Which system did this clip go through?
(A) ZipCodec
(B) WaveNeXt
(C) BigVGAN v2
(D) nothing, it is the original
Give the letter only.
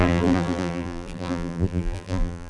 C